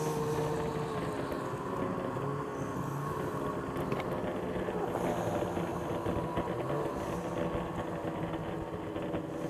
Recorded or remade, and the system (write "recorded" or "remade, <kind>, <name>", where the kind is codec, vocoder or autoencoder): recorded